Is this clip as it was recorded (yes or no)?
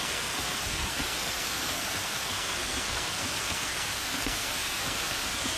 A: no